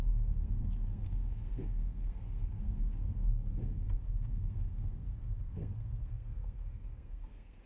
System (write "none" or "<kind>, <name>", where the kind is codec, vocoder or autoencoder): codec, SNAC